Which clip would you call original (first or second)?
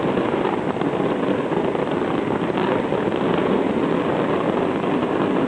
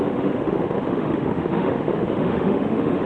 first